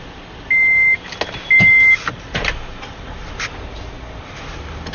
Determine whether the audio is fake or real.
real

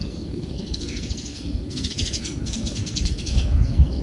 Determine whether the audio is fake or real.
fake